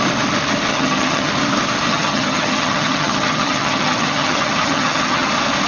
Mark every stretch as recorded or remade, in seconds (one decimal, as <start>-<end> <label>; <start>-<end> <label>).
0.0-0.7 recorded; 0.7-1.3 remade; 1.3-1.9 recorded; 1.9-5.3 remade; 5.3-5.7 recorded

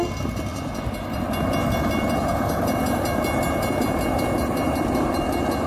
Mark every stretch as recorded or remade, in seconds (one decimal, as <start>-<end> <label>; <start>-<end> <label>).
0.0-5.7 recorded